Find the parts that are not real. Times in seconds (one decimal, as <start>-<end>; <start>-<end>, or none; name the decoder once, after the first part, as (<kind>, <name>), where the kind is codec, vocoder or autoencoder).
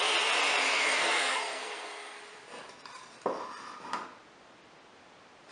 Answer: 0.7-2.2 (codec, SNAC)